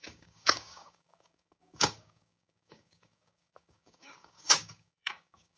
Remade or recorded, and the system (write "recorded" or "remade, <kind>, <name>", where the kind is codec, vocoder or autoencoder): remade, codec, DAC